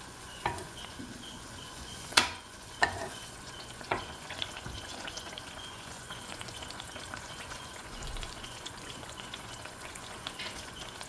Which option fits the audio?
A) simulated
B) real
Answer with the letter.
A